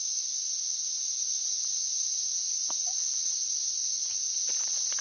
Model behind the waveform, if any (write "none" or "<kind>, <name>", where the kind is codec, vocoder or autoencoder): none